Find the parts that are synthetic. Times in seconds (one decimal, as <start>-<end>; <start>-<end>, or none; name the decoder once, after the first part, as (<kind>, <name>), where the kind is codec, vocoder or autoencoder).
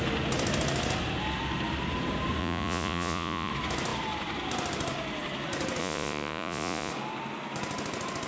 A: 2.4-3.5 (vocoder, Vocos); 5.8-6.9